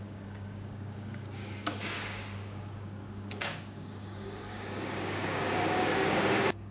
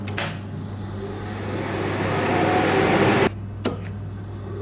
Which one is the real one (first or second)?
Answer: second